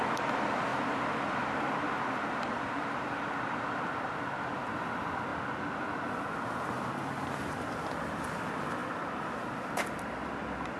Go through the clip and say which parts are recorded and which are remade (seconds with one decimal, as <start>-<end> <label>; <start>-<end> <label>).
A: 0.0-0.7 remade; 0.7-1.7 recorded; 1.7-5.3 remade; 5.3-6.5 recorded; 6.5-10.8 remade